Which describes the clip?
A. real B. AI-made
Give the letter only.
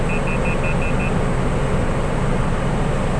A